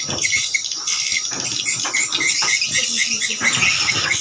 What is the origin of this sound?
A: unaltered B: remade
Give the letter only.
A